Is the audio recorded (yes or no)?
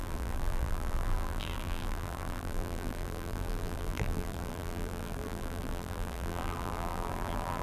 no